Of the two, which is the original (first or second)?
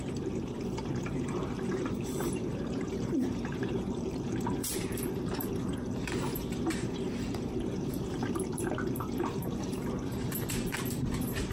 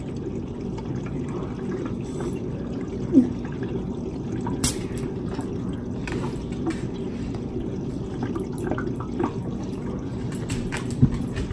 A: second